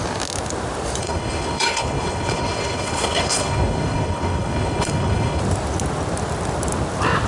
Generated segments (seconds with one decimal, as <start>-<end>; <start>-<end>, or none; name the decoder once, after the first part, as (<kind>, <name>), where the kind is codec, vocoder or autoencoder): 1.0-5.4 (codec, HILCodec)